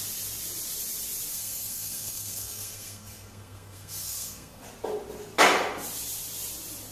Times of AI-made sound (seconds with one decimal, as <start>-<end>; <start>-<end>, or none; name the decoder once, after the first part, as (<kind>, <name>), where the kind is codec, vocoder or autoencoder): 1.3-4.6 (codec, SNAC)